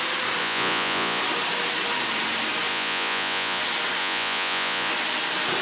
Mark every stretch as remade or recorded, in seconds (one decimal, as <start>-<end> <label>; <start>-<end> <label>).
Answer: 0.0-0.4 recorded; 0.4-1.2 remade; 1.2-2.7 recorded; 2.7-3.6 remade; 3.6-4.0 recorded; 4.0-4.9 remade; 4.9-5.6 recorded